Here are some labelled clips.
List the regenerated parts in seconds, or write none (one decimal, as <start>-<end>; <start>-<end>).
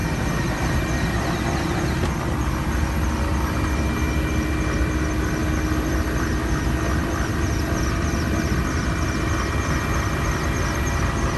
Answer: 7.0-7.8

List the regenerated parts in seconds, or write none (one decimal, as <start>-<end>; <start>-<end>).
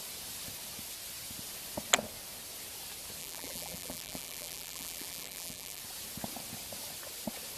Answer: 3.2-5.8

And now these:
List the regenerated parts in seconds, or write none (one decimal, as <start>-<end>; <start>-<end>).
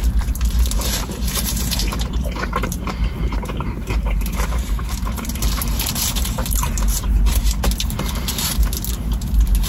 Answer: 0.0-7.4; 9.0-9.7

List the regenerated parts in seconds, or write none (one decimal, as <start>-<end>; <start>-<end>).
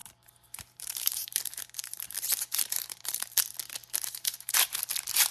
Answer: 0.0-3.2; 3.8-4.8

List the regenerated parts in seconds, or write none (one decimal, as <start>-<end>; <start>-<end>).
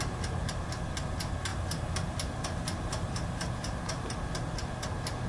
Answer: 1.5-4.1